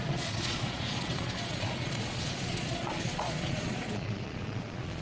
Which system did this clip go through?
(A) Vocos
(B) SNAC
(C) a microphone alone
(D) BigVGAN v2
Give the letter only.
A